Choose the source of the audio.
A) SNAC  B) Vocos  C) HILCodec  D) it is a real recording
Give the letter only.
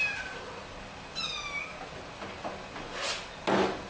D